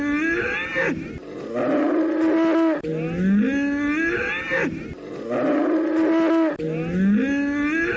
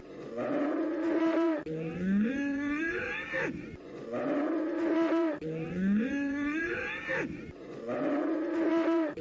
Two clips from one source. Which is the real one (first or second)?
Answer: first